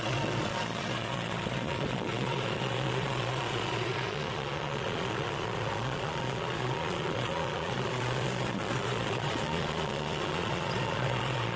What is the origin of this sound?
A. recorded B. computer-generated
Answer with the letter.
B